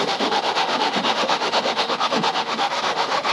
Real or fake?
fake